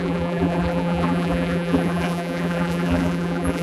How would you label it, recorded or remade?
remade